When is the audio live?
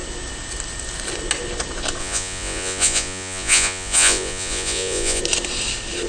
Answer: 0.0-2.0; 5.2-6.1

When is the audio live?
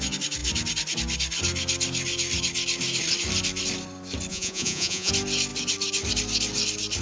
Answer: 0.0-4.3; 5.1-7.0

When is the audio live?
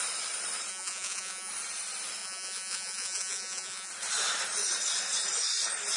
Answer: 0.0-0.7; 1.5-2.2; 3.9-6.0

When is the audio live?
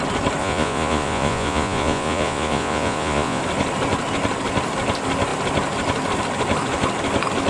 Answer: 0.0-0.4; 3.4-7.5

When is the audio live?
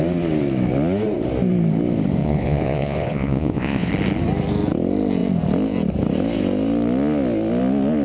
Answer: 0.0-2.2; 3.9-8.0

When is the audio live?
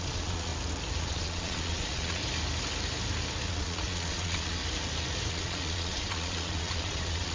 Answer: 0.5-1.0; 2.2-3.5; 4.6-5.3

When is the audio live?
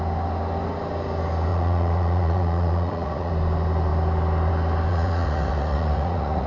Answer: 0.0-1.5; 3.3-4.9